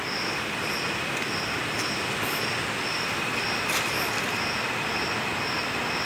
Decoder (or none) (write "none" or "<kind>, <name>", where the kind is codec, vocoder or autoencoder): none